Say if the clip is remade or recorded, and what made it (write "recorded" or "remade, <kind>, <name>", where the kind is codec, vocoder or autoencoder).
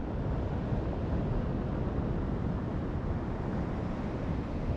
recorded